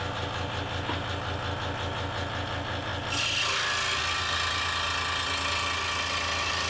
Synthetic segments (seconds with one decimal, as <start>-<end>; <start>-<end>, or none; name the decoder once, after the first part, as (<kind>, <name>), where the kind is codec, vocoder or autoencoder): none